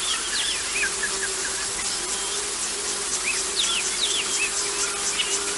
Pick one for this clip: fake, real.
real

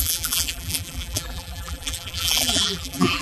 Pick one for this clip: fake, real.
fake